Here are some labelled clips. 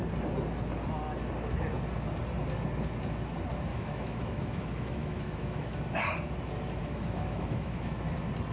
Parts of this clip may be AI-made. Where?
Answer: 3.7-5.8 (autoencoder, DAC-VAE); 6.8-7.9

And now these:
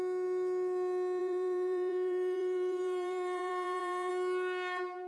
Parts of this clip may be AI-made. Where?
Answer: 1.2-4.1 (vocoder, BigVGAN v2)

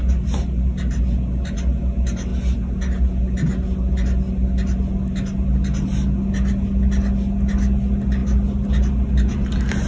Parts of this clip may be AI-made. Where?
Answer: none

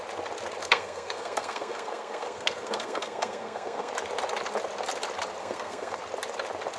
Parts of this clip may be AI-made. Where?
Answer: 0.6-3.9 (codec, SNAC); 5.4-6.0

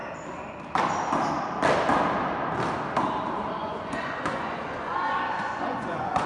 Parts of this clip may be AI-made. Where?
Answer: 3.6-6.3 (vocoder, Vocos)

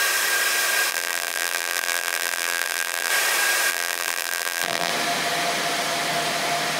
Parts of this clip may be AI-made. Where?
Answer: 0.9-3.1 (vocoder, BigVGAN v2); 3.7-4.9

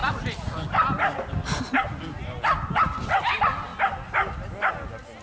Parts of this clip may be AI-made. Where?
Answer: none

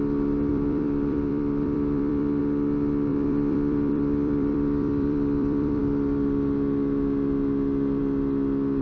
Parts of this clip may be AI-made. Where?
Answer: 0.5-2.4 (vocoder, BigVGAN v2); 3.1-5.8